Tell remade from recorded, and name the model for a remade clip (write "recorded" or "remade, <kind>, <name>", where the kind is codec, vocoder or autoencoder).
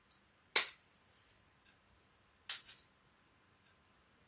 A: recorded